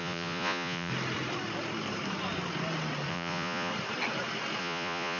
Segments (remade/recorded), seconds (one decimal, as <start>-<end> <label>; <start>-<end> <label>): 0.0-0.9 remade; 0.9-3.1 recorded; 3.1-3.7 remade; 3.7-4.6 recorded; 4.6-5.2 remade